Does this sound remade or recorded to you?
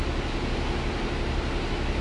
recorded